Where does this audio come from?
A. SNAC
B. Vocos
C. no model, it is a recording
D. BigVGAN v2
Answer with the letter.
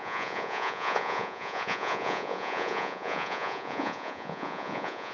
B